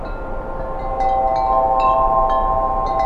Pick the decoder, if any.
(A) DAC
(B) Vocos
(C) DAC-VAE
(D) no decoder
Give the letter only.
D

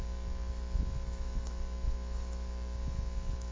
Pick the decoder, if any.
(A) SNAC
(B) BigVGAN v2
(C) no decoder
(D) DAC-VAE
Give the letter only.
D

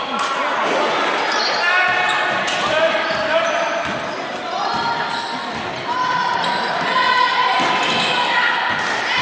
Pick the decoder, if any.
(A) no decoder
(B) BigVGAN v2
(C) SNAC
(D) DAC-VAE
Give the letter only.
A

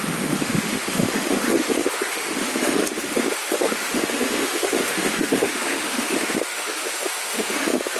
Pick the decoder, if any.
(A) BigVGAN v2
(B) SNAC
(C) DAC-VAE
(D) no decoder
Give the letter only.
C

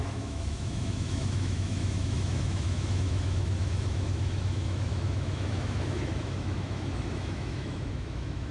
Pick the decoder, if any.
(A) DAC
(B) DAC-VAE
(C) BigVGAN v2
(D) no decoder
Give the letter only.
B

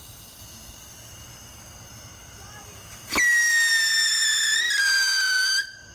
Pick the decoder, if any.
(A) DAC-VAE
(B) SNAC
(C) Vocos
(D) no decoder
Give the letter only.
D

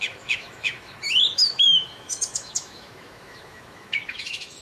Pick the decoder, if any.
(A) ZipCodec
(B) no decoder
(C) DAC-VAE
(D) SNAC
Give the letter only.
C